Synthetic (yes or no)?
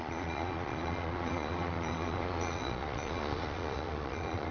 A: yes